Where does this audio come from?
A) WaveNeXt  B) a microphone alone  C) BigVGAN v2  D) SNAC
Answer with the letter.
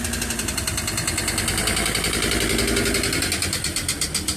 B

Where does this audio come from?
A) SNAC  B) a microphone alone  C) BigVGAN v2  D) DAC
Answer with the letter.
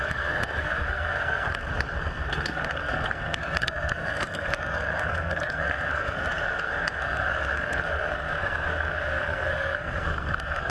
A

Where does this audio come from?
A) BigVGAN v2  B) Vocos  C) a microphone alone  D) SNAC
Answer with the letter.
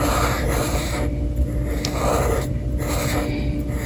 C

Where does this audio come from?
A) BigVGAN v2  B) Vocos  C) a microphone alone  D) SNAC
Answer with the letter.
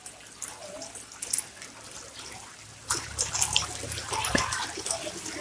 C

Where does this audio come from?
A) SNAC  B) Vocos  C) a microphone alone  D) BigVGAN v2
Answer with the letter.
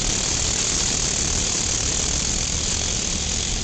C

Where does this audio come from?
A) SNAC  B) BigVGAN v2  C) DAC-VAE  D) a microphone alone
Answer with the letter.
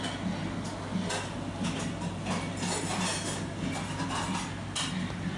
D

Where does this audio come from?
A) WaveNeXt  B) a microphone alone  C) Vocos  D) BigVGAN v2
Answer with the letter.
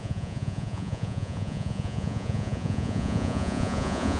C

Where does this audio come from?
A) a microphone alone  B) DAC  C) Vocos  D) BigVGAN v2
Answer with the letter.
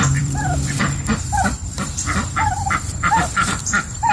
D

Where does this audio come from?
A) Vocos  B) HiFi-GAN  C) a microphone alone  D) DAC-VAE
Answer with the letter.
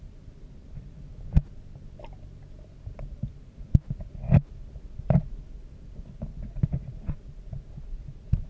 C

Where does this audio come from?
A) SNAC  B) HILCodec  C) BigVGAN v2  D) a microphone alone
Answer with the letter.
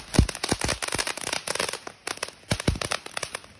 D